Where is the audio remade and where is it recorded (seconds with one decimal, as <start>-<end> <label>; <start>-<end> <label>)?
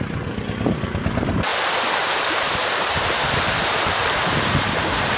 0.0-5.2 recorded